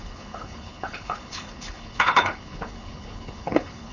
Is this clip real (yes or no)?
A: no